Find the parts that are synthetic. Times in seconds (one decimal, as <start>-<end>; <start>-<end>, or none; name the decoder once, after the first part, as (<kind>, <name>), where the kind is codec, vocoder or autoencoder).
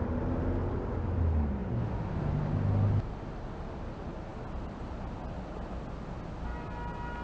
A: none